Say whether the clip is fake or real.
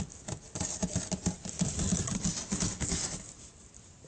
real